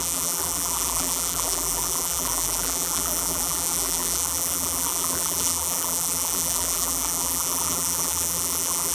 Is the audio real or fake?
fake